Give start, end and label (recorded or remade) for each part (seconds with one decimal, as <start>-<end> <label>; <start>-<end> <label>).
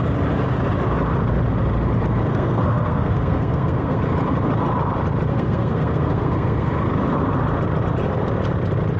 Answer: 0.0-2.3 recorded; 2.3-4.0 remade; 4.0-5.3 recorded; 5.3-6.7 remade; 6.7-9.0 recorded